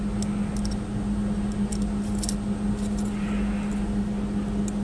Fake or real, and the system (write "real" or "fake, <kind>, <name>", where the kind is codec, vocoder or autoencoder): real